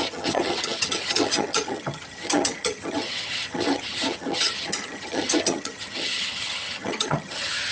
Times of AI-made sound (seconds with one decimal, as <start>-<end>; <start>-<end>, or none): 0.0-7.7